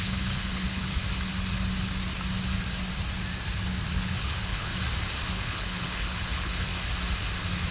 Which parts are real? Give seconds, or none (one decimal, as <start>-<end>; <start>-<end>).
1.0-3.9; 4.7-5.3; 6.7-7.7